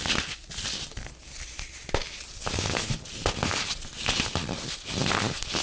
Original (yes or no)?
yes